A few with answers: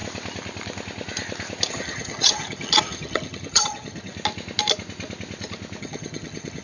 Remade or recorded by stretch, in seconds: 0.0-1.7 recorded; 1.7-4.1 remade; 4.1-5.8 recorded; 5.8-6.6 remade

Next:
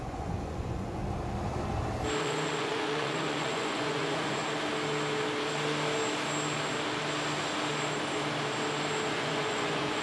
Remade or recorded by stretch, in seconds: 0.0-1.0 remade; 1.0-2.2 recorded; 2.2-4.4 remade; 4.4-9.1 recorded; 9.1-10.0 remade

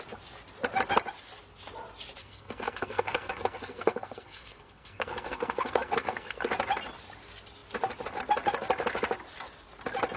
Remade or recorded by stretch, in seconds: 0.0-2.2 recorded; 2.2-6.5 remade; 6.5-10.2 recorded

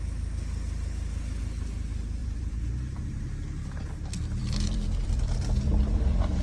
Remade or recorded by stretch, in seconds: 0.0-2.2 recorded; 2.2-6.0 remade; 6.0-6.4 recorded

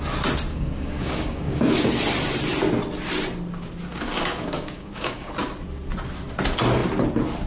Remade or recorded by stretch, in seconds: 0.0-0.5 recorded; 0.5-1.9 remade; 1.9-3.9 recorded; 3.9-5.3 remade; 5.3-7.5 recorded

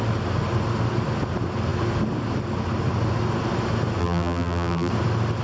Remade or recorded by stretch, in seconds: 0.0-4.0 recorded; 4.0-4.9 remade; 4.9-5.4 recorded

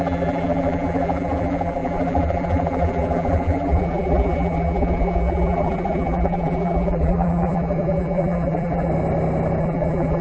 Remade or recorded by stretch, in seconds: 0.0-8.9 remade; 8.9-9.6 recorded; 9.6-10.2 remade

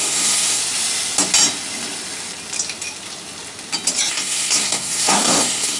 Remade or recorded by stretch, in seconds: 0.0-0.6 remade; 0.6-4.1 recorded; 4.1-5.8 remade